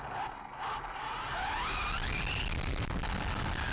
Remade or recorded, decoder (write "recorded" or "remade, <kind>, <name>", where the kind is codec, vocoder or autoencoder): recorded